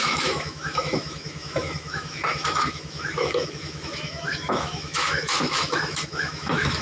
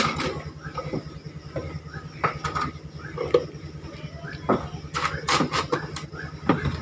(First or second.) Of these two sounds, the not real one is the first